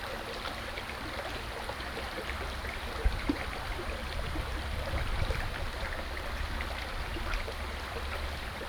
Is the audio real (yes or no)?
no